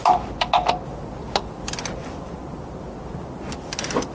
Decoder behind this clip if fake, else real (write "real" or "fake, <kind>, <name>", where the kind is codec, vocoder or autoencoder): real